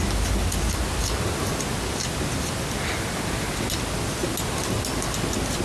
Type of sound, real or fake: real